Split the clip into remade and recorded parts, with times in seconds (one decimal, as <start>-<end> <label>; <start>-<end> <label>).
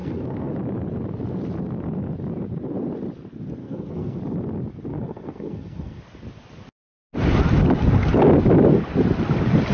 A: 0.0-0.5 remade; 0.5-3.6 recorded; 3.6-4.2 remade; 4.2-4.9 recorded; 4.9-6.0 remade; 6.0-9.7 recorded